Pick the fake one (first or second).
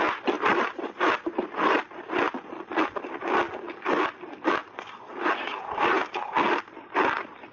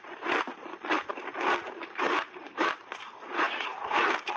second